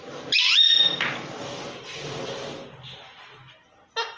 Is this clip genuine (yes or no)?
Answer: yes